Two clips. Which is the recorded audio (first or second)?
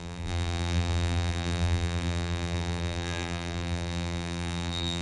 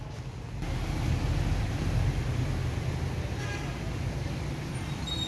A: second